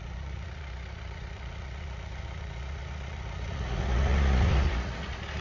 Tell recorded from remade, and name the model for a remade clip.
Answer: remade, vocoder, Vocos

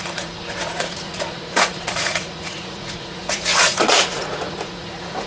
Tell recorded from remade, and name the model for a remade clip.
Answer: remade, vocoder, Vocos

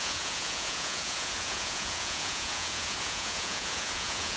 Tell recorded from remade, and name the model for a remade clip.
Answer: remade, vocoder, Vocos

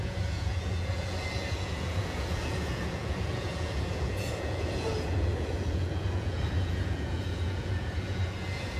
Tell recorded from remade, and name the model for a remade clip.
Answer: remade, vocoder, Vocos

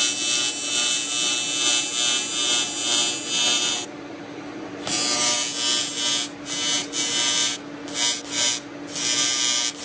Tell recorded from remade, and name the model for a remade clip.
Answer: recorded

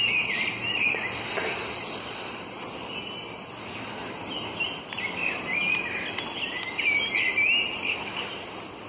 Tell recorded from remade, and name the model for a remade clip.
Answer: recorded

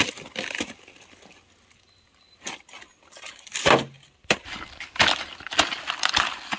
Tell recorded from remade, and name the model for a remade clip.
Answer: recorded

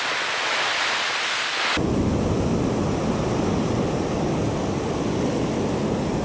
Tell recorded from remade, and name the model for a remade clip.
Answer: recorded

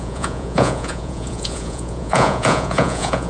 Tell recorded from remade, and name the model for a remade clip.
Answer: remade, vocoder, Vocos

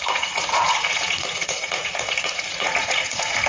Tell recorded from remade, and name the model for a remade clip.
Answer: remade, vocoder, Vocos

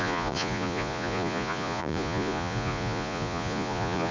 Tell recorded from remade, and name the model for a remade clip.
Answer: remade, vocoder, Vocos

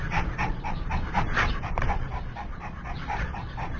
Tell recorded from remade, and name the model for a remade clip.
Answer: remade, vocoder, Vocos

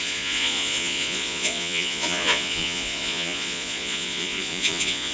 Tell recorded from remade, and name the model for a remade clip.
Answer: remade, vocoder, Vocos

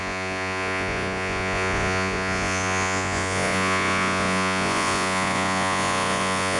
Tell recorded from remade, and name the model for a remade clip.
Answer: remade, vocoder, Vocos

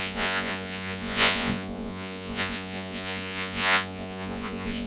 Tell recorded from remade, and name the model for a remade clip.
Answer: remade, vocoder, Vocos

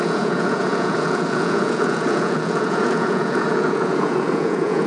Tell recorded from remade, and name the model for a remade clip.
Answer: remade, vocoder, Vocos